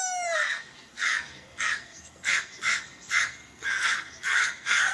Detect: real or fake fake